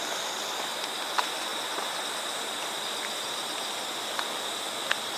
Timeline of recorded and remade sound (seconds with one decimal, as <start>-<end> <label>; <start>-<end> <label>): 0.0-5.2 recorded